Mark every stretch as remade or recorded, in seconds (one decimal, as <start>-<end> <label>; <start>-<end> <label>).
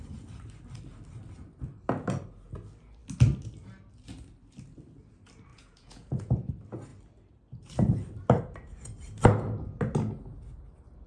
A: 0.0-5.5 recorded; 5.5-6.5 remade; 6.5-11.1 recorded